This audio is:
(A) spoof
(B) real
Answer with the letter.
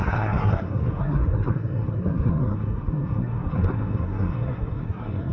A